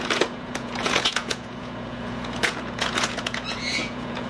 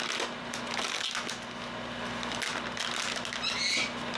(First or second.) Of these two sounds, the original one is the second